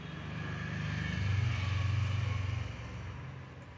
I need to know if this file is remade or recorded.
recorded